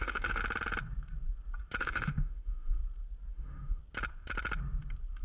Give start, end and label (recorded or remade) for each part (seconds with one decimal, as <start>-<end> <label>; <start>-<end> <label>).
0.0-0.4 remade; 0.4-1.8 recorded; 1.8-2.8 remade; 2.8-3.3 recorded; 3.3-3.8 remade; 3.8-5.2 recorded